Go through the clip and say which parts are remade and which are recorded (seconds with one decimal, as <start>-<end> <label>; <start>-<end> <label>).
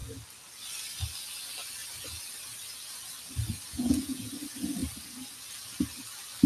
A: 0.0-3.7 recorded; 3.7-4.3 remade; 4.3-6.5 recorded